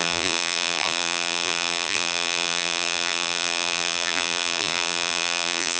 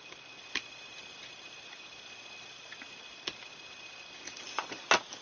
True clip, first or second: second